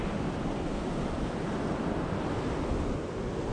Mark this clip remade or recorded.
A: recorded